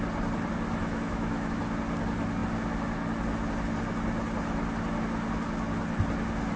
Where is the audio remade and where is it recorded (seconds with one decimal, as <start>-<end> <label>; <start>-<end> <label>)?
0.0-0.8 recorded; 0.8-1.6 remade; 1.6-6.6 recorded